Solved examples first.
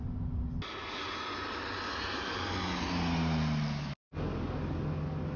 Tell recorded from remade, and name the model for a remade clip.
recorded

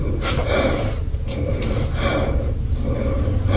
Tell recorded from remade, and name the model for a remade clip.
remade, vocoder, BigVGAN v2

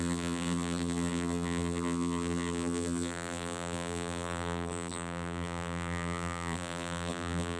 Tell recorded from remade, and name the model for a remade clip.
remade, vocoder, BigVGAN v2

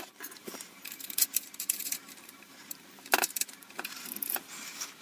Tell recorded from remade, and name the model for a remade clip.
remade, vocoder, BigVGAN v2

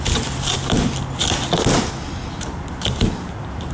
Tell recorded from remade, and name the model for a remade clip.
recorded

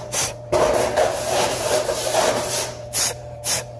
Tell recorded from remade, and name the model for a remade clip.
remade, vocoder, BigVGAN v2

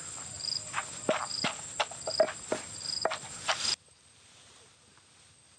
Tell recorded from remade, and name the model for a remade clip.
recorded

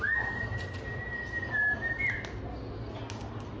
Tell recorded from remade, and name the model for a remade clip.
recorded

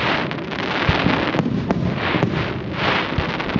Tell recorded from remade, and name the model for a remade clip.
recorded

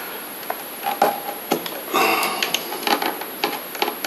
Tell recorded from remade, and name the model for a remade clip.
recorded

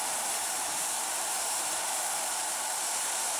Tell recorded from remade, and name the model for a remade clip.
remade, vocoder, BigVGAN v2